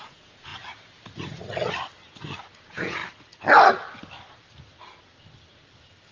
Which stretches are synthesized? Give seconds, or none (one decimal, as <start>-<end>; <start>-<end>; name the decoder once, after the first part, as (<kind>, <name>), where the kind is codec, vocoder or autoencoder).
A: 0.0-0.5 (vocoder, Vocos); 2.6-3.0